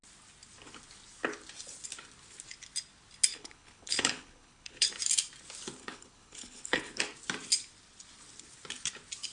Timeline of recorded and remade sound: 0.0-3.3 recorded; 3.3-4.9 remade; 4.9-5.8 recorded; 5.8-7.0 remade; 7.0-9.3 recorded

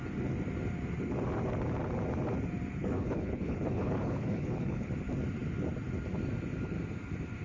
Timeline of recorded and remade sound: 0.0-2.8 recorded; 2.8-4.9 remade; 4.9-7.4 recorded